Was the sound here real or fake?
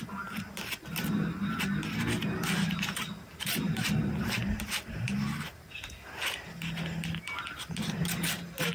real